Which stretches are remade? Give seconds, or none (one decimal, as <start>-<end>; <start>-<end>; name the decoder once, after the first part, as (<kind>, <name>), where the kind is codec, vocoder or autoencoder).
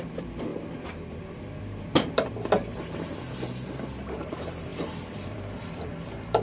0.0-0.5 (vocoder, BigVGAN v2); 1.6-2.6; 4.2-6.4